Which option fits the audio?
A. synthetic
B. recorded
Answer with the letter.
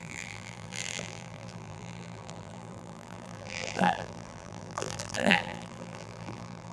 A